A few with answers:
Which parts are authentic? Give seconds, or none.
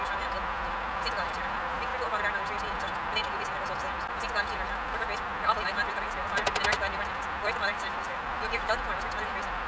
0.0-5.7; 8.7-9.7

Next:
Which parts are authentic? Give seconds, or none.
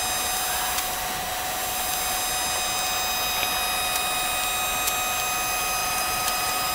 0.0-5.8